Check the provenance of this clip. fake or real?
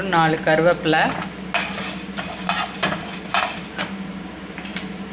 real